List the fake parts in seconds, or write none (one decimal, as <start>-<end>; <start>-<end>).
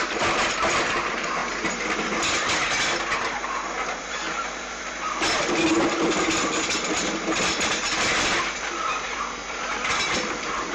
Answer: 0.0-1.4; 4.0-10.7